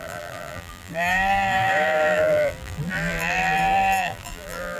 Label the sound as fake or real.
fake